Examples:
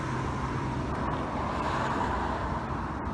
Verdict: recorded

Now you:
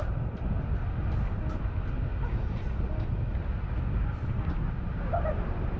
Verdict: recorded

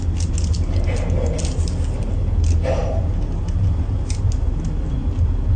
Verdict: recorded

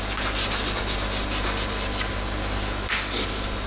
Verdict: recorded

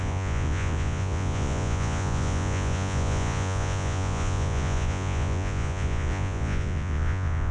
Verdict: remade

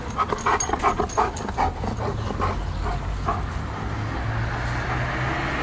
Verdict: recorded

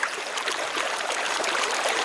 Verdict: remade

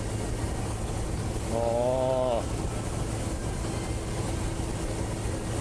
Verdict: recorded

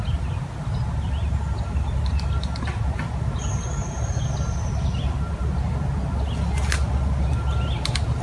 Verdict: recorded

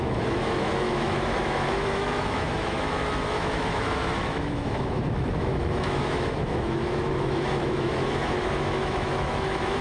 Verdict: remade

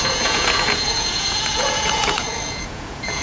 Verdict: remade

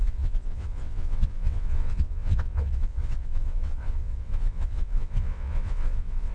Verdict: remade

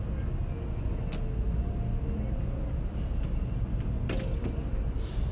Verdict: recorded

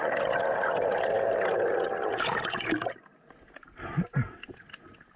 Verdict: recorded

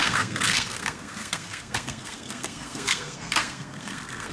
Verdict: remade